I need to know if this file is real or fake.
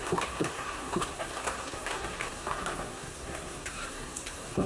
fake